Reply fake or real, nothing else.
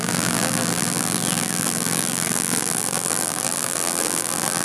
fake